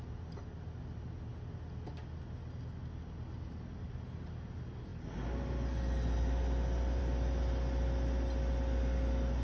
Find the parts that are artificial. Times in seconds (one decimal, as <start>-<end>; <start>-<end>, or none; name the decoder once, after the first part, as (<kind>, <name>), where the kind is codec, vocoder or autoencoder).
none